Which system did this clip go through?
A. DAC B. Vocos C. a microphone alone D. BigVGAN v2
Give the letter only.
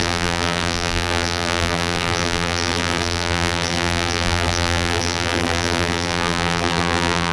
D